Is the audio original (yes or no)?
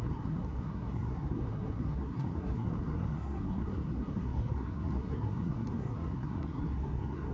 no